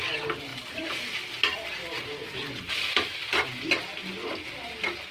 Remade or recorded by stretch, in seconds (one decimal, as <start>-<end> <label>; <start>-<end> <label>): 0.0-0.5 recorded; 0.5-1.1 remade; 1.1-1.8 recorded; 1.8-2.7 remade; 2.7-5.1 recorded

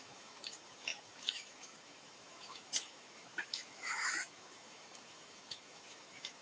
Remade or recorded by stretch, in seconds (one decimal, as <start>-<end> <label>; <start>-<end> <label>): 0.0-6.4 remade

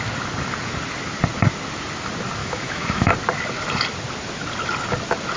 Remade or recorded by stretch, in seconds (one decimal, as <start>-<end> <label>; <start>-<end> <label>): 0.0-2.4 recorded; 2.4-3.1 remade; 3.1-5.4 recorded